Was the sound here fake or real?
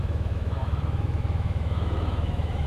fake